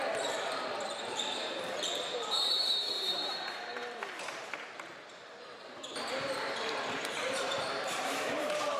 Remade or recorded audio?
remade